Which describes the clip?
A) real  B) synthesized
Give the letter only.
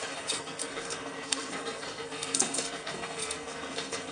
B